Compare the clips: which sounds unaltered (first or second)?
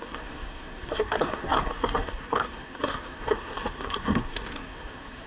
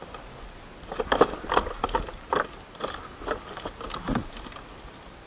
second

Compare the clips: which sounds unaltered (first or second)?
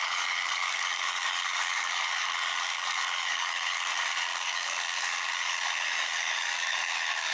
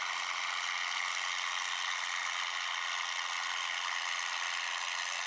second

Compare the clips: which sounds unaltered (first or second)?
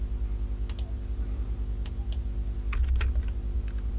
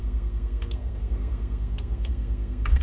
first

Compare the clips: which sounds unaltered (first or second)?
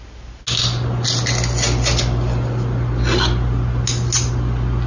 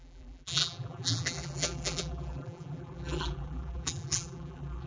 first